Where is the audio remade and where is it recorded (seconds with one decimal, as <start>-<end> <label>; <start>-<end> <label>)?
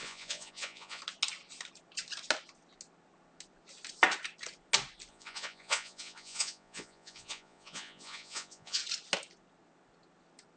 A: 0.0-1.0 remade; 1.0-5.1 recorded; 5.1-8.8 remade; 8.8-10.6 recorded